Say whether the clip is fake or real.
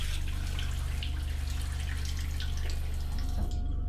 real